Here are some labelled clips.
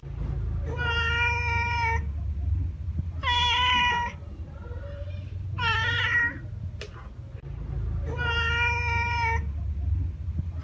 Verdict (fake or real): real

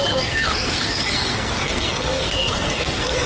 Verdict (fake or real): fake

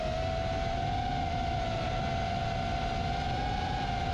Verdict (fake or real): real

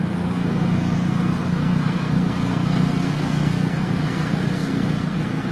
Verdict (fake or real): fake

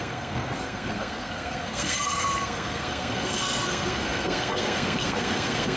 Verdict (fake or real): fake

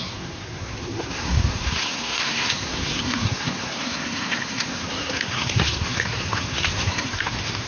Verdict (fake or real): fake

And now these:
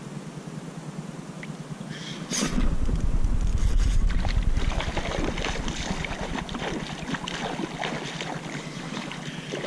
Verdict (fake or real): real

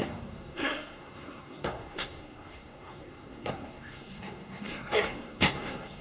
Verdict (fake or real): fake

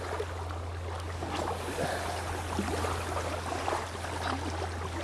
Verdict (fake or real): real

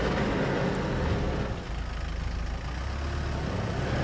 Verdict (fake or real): real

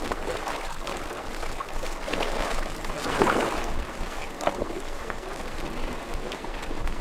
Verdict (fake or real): fake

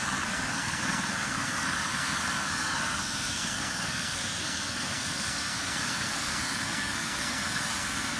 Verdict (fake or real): fake